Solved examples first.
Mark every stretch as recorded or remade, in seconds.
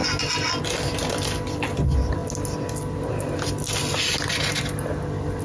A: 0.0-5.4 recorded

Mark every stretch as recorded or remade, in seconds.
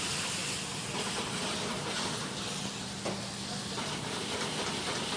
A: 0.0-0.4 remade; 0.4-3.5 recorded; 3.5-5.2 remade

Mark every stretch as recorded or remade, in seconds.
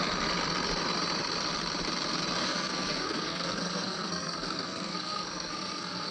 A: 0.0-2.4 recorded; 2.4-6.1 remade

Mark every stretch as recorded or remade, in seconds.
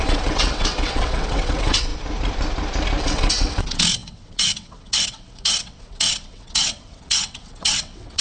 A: 0.0-1.9 remade; 1.9-3.0 recorded; 3.0-8.2 remade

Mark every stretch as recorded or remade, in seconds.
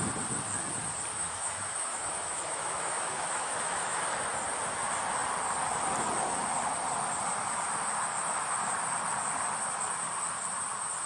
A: 0.0-1.1 recorded; 1.1-4.0 remade; 4.0-11.1 recorded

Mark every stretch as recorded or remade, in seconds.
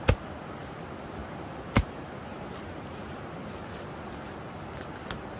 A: 0.0-5.4 recorded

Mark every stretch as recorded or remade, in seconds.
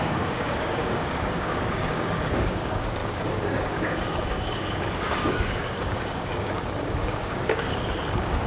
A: 0.0-8.5 remade